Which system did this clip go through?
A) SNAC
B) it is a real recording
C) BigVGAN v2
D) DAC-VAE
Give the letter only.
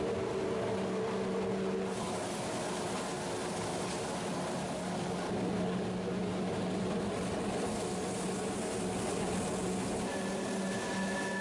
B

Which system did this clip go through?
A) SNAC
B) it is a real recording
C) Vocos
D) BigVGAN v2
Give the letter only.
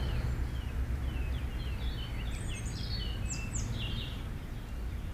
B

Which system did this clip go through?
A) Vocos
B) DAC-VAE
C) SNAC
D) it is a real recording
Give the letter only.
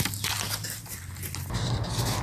D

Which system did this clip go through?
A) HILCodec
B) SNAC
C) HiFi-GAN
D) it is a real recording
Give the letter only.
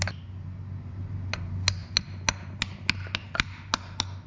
D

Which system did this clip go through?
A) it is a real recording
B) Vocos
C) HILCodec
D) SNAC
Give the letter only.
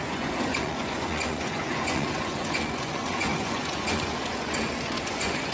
B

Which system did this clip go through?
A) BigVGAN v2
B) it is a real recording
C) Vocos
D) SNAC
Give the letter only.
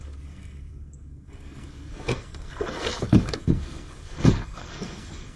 D